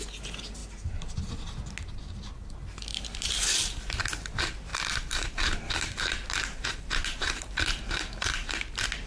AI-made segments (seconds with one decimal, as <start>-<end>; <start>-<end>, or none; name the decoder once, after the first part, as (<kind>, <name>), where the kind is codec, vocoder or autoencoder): 2.9-3.9 (vocoder, BigVGAN v2); 4.7-8.5